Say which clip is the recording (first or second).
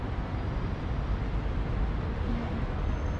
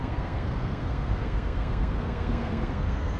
first